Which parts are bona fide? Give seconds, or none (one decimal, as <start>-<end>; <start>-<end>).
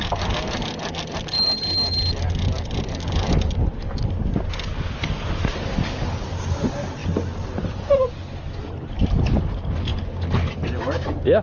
0.0-11.4